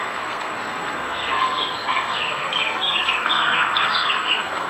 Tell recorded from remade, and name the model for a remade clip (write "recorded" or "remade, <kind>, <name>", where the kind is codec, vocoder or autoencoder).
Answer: remade, codec, SNAC